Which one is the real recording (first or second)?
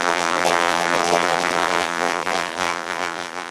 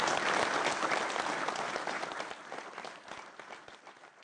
second